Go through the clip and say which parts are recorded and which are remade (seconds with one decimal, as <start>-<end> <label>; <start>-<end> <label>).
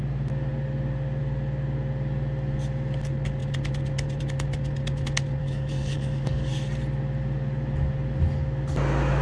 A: 0.0-5.4 recorded; 5.4-6.5 remade; 6.5-9.2 recorded